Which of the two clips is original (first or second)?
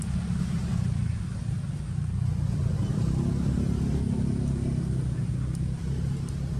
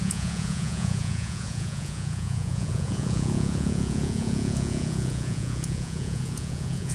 first